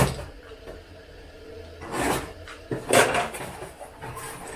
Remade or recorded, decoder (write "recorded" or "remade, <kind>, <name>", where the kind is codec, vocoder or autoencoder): recorded